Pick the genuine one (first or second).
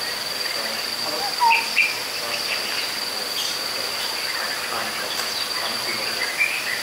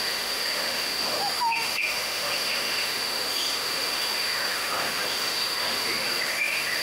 first